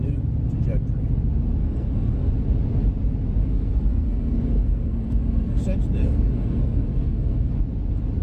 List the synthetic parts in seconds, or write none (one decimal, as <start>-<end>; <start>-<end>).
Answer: 1.6-2.3; 3.4-5.6; 6.0-7.5